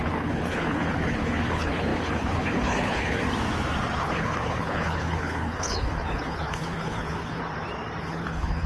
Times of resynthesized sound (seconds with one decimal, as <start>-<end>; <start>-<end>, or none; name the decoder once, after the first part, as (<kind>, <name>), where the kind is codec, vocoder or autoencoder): 0.0-3.2 (codec, HILCodec); 4.0-7.4; 8.0-8.7